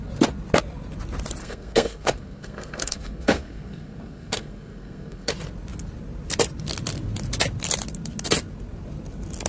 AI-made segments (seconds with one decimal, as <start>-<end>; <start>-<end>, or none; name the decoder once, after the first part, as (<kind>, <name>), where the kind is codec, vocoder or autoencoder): 1.4-5.3 (codec, SNAC)